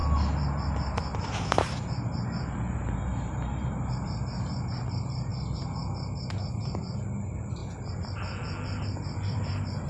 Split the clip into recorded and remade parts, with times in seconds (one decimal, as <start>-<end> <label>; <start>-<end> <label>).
0.0-2.2 recorded; 2.2-5.3 remade; 5.3-6.5 recorded; 6.5-7.6 remade; 7.6-8.8 recorded; 8.8-9.9 remade